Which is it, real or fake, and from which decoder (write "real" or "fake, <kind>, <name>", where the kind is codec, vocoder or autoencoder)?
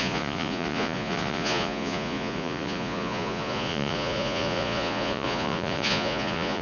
fake, vocoder, Vocos